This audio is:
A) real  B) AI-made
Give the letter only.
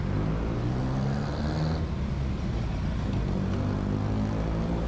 A